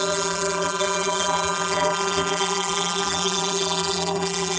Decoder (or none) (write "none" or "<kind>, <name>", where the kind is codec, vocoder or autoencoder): vocoder, BigVGAN v2